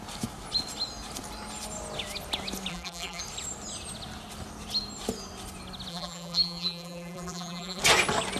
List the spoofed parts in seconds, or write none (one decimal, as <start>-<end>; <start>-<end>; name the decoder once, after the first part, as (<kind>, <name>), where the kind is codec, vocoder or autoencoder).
2.7-3.2 (vocoder, BigVGAN v2); 5.9-7.8